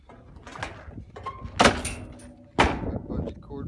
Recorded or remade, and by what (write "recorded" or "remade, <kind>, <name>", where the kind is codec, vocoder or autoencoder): recorded